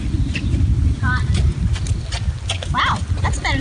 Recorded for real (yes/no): yes